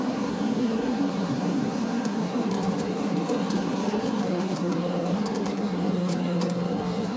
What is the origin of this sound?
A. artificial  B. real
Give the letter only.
A